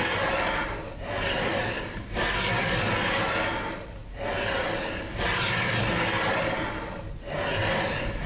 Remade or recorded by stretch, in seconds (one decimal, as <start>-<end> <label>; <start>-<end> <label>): 0.0-8.3 recorded